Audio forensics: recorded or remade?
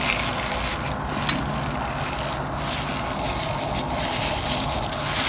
recorded